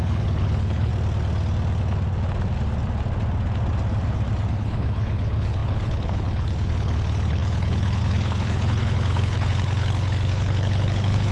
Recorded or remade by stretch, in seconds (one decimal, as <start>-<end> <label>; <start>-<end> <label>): 0.0-0.9 remade; 0.9-4.5 recorded; 4.5-11.3 remade